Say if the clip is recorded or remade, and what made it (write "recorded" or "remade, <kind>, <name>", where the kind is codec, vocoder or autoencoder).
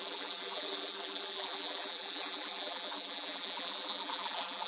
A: remade, vocoder, BigVGAN v2